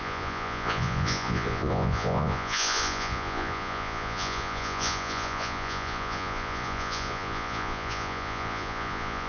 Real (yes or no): no